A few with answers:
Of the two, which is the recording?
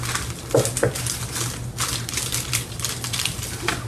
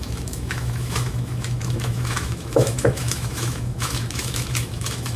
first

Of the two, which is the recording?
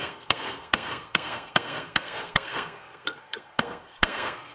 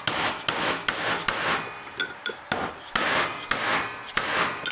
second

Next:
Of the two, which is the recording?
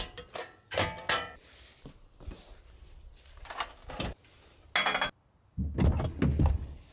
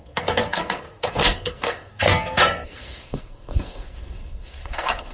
first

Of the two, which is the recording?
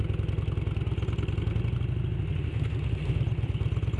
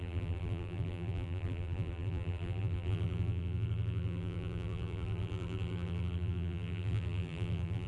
first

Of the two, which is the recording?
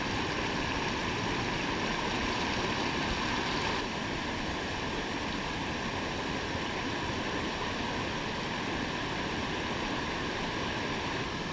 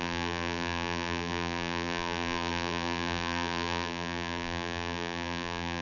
first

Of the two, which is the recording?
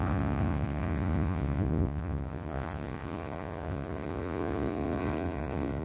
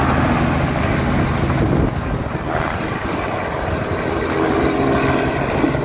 second